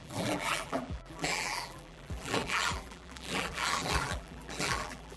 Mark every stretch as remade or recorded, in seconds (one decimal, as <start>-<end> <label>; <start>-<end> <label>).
0.0-5.2 remade